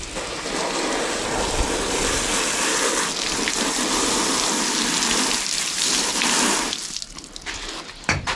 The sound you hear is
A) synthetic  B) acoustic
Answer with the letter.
B